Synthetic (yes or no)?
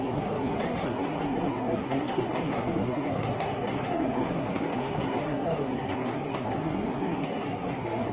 yes